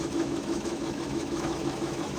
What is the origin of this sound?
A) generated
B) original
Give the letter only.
A